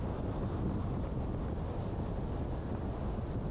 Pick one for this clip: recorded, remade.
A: recorded